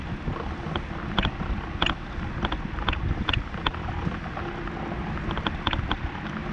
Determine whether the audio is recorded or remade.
recorded